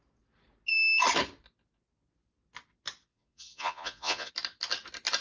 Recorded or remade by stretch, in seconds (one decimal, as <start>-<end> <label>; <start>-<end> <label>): 0.0-3.1 recorded; 3.1-4.3 remade; 4.3-5.2 recorded